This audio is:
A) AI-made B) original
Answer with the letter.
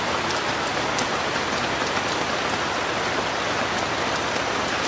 B